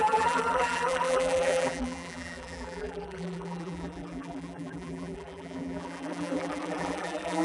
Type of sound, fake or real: fake